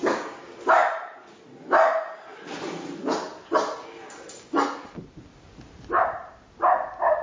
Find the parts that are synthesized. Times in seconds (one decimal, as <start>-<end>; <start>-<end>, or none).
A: 0.0-0.6